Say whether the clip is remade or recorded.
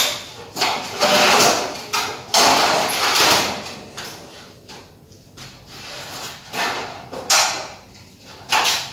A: recorded